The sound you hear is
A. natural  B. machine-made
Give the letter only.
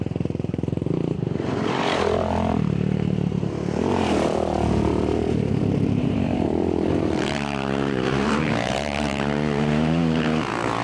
B